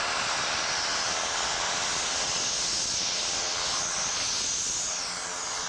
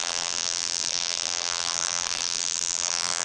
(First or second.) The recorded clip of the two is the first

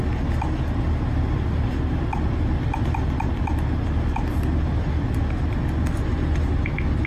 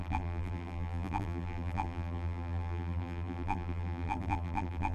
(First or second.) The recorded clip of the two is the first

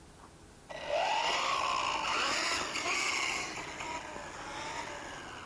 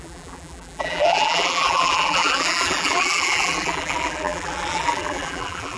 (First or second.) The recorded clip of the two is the first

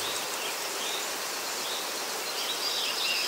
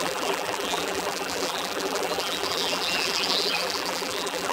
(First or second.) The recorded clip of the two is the first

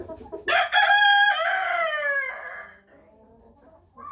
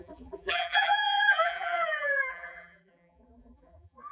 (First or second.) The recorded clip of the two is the first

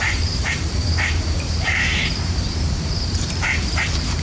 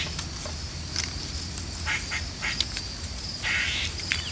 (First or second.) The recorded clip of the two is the second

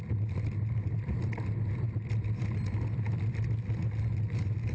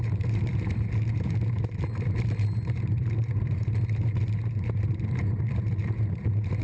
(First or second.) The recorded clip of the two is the first